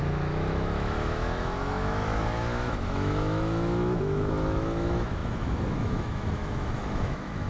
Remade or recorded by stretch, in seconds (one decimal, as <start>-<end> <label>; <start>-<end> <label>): 0.0-7.5 remade